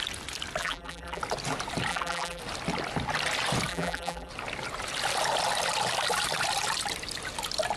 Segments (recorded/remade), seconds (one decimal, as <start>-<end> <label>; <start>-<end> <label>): 0.0-0.6 recorded; 0.6-1.2 remade; 1.2-1.9 recorded; 1.9-2.4 remade; 2.4-3.7 recorded; 3.7-4.3 remade; 4.3-7.8 recorded